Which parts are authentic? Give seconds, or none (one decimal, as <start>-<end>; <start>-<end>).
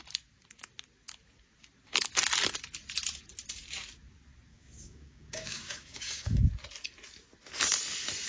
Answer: 0.0-4.5; 6.5-8.3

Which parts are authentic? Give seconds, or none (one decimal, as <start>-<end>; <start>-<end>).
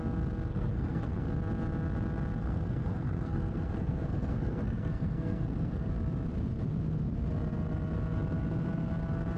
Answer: 0.0-0.5; 1.3-2.4; 5.9-9.4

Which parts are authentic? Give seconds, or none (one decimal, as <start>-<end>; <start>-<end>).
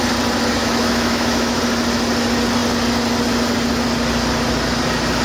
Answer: 0.0-0.6; 1.6-5.2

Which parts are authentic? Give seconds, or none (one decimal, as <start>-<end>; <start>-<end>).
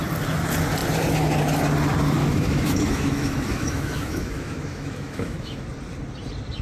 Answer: 0.0-2.2; 5.6-6.6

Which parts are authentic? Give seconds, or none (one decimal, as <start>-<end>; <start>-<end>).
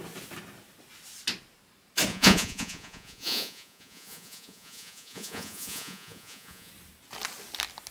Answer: 0.0-2.1; 6.7-7.9